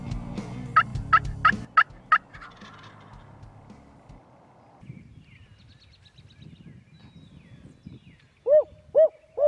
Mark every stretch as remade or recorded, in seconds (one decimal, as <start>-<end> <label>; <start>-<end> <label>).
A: 0.0-9.5 recorded